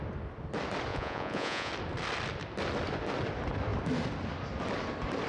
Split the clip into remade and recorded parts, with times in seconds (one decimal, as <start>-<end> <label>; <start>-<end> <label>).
0.0-0.9 recorded; 0.9-1.7 remade; 1.7-5.3 recorded